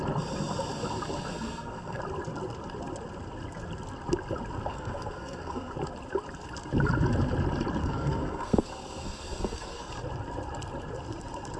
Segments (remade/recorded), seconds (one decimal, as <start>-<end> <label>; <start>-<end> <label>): 0.0-1.3 recorded; 1.3-2.0 remade; 2.0-4.7 recorded; 4.7-5.7 remade; 5.7-7.8 recorded; 7.8-9.9 remade; 9.9-11.6 recorded